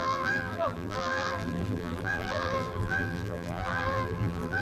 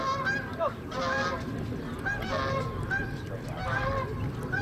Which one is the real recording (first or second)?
second